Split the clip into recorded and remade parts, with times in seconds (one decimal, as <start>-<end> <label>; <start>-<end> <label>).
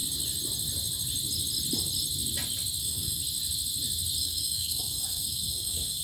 0.0-2.8 recorded; 2.8-3.2 remade; 3.2-4.2 recorded; 4.2-6.0 remade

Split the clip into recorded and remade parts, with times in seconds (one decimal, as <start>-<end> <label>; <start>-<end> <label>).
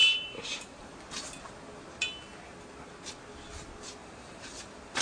0.0-0.8 remade; 0.8-4.0 recorded; 4.0-4.6 remade; 4.6-5.0 recorded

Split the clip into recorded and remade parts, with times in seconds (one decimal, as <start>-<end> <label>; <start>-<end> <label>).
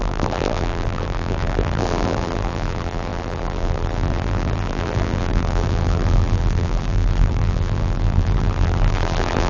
0.0-9.5 remade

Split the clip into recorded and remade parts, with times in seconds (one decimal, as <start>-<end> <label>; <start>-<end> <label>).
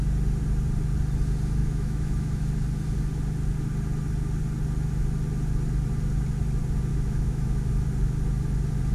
0.0-1.6 recorded; 1.6-2.5 remade; 2.5-6.9 recorded; 6.9-7.7 remade; 7.7-8.9 recorded